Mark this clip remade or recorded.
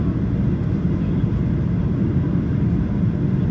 recorded